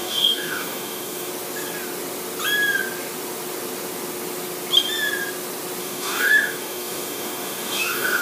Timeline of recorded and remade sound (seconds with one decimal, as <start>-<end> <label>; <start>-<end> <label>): 0.0-1.3 remade; 1.3-5.8 recorded; 5.8-8.2 remade